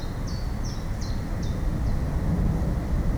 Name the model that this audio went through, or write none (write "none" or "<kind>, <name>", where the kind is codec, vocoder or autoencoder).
none